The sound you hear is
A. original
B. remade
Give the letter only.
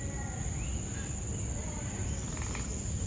A